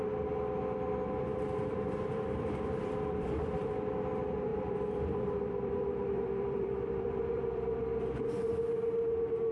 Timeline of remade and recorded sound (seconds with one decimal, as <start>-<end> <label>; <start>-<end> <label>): 0.0-1.3 recorded; 1.3-3.3 remade; 3.3-4.5 recorded; 4.5-8.0 remade; 8.0-9.5 recorded